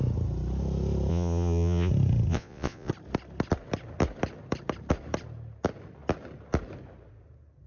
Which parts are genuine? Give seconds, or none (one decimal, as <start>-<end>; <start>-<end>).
0.0-1.1; 1.9-2.3; 2.9-7.7